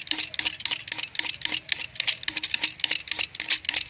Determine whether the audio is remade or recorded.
recorded